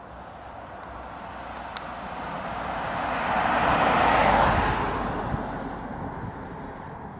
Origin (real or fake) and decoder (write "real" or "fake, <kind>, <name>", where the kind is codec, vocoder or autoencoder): real